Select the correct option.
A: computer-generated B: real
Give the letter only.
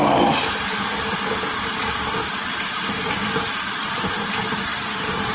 B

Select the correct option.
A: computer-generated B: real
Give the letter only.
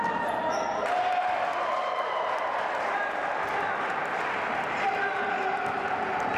B